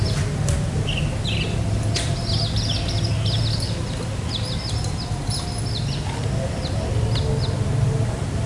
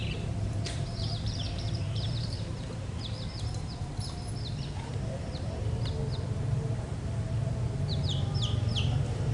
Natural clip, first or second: first